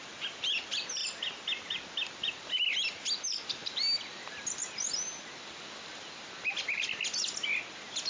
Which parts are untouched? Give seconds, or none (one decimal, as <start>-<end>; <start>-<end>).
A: 0.0-8.1